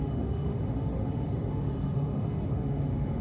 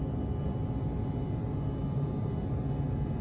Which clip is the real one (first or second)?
second